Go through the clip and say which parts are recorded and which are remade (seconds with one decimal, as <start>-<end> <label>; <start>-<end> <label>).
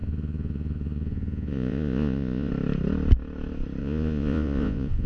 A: 0.0-2.5 remade; 2.5-3.8 recorded; 3.8-5.1 remade